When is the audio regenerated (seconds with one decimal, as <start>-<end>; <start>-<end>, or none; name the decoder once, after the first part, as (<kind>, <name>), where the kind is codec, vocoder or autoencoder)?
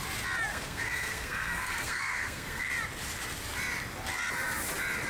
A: 0.5-2.7 (codec, SNAC)